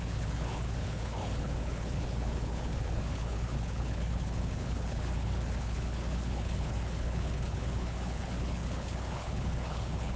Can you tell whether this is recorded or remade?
remade